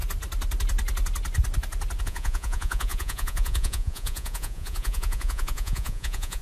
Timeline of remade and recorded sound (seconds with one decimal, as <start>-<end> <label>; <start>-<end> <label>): 0.0-2.0 recorded; 2.0-6.4 remade